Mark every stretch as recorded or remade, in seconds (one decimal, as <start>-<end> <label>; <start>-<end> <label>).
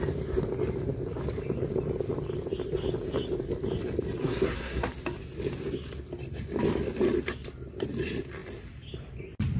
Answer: 0.0-4.2 recorded; 4.2-4.9 remade; 4.9-9.6 recorded